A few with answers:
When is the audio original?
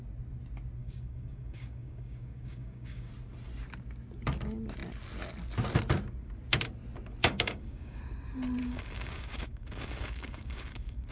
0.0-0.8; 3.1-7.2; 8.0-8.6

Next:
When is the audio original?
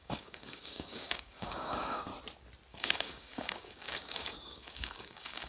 2.1-2.7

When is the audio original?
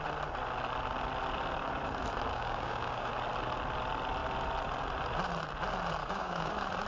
0.0-2.3; 3.1-6.0; 6.5-6.9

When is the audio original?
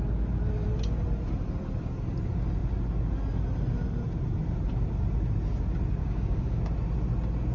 0.0-6.0; 6.6-7.5